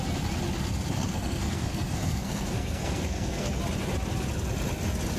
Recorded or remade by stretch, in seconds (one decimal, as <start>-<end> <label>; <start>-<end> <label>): 0.0-0.9 recorded; 0.9-3.6 remade; 3.6-5.2 recorded